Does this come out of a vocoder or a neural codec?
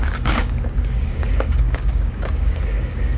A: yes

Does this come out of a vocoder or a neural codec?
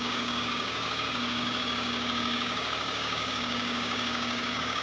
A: yes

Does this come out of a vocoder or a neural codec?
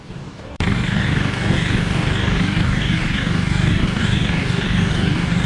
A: yes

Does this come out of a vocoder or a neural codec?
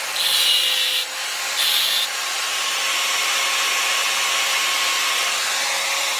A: no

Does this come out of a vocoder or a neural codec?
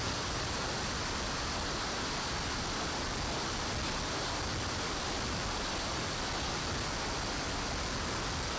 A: no